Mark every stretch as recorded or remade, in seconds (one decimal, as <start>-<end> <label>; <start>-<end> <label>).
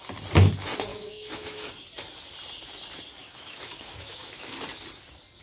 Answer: 0.0-0.9 recorded; 0.9-1.7 remade; 1.7-3.2 recorded; 3.2-4.5 remade; 4.5-5.4 recorded